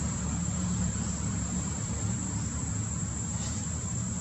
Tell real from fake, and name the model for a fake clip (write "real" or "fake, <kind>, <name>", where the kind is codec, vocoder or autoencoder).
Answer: fake, vocoder, BigVGAN v2